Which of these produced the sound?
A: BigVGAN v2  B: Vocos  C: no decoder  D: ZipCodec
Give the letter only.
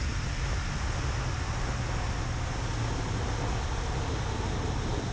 C